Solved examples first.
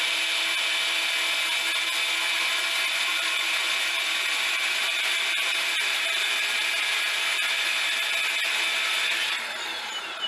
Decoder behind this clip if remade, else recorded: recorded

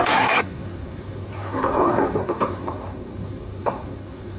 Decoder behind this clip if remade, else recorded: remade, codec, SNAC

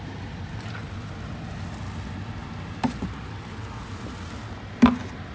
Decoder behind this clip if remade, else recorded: recorded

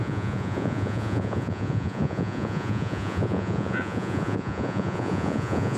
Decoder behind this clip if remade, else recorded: remade, vocoder, Vocos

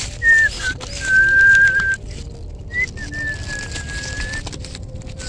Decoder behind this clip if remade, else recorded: recorded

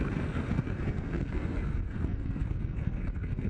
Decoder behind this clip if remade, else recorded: remade, codec, SNAC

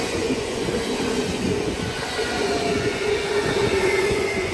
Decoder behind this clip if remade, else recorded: remade, vocoder, Vocos